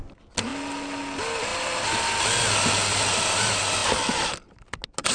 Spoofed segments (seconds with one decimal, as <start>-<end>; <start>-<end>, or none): none